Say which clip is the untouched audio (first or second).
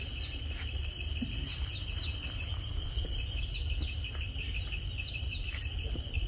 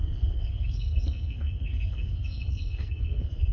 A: first